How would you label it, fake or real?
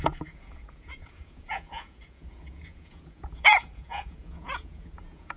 fake